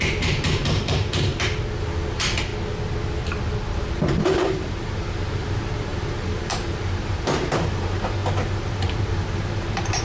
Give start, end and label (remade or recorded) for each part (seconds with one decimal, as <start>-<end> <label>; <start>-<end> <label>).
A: 0.0-1.3 remade; 1.3-1.8 recorded; 1.8-2.5 remade; 2.5-3.7 recorded; 3.7-10.0 remade